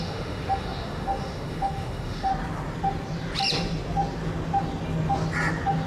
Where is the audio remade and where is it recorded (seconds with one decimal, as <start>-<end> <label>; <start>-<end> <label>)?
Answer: 0.0-2.3 remade; 2.3-5.9 recorded